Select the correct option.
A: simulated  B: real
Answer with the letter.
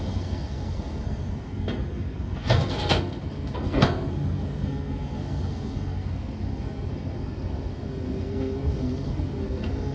A